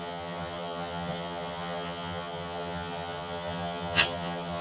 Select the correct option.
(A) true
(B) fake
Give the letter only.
B